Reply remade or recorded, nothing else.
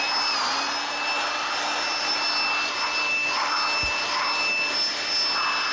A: recorded